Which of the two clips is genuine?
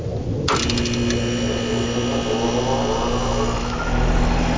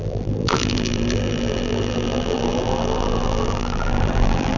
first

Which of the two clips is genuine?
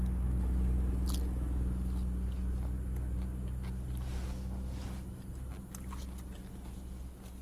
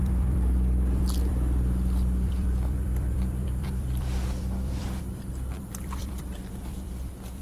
first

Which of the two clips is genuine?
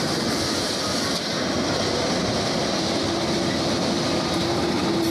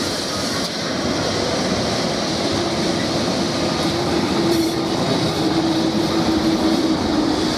first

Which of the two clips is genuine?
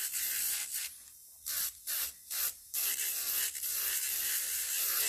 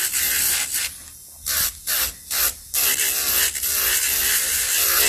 second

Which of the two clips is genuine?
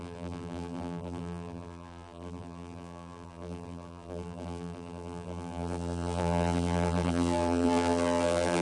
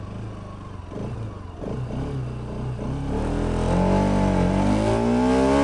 second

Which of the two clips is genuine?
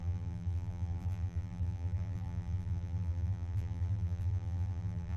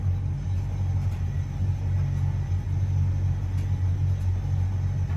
second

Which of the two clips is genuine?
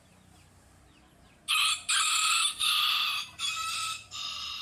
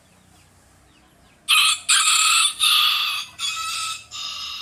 second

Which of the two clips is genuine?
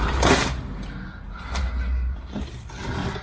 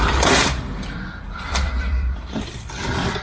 first